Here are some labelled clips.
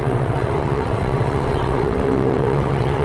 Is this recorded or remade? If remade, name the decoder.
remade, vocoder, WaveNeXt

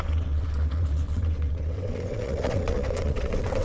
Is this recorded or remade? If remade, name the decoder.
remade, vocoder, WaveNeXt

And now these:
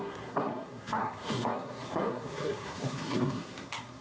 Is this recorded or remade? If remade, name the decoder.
remade, codec, SNAC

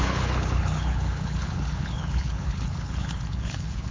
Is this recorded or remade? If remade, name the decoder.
remade, codec, HILCodec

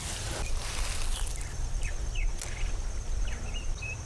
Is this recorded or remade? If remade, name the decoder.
recorded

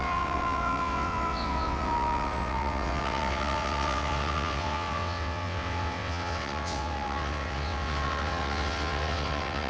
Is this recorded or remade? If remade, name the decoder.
remade, vocoder, WaveNeXt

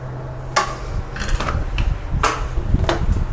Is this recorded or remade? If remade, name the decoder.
recorded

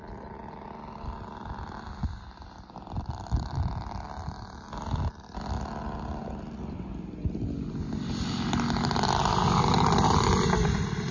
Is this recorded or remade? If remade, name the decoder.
recorded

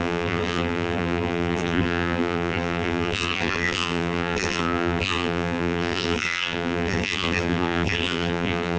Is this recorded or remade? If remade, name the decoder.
remade, vocoder, BigVGAN v2